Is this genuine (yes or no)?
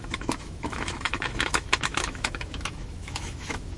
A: no